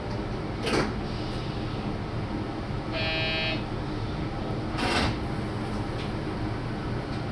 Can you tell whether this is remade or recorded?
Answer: recorded